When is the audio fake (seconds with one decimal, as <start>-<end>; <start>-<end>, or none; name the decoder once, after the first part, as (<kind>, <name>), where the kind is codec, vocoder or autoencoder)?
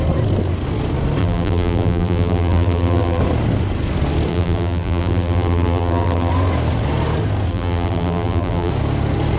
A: 1.2-3.2 (vocoder, BigVGAN v2); 4.3-6.3; 7.5-8.7